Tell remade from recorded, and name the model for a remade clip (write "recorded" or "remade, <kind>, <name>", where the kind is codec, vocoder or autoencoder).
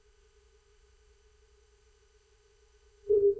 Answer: remade, codec, ZipCodec